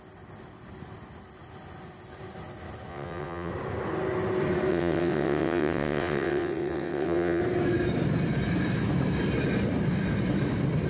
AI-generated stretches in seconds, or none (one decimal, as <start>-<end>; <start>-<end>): 2.9-3.5; 4.7-7.4